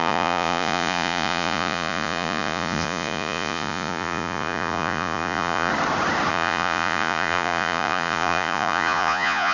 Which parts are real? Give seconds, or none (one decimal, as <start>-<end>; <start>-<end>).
5.7-6.3